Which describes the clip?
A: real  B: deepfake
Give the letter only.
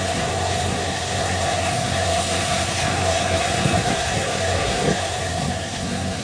B